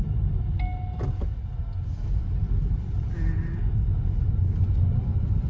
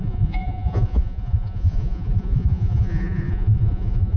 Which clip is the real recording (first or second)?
first